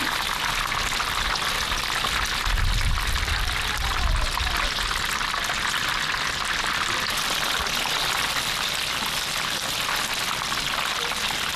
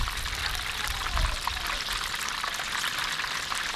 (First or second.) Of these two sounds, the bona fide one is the first